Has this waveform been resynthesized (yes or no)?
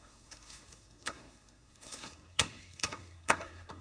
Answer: yes